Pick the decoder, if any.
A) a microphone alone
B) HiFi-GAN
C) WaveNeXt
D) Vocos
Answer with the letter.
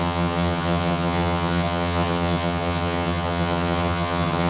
B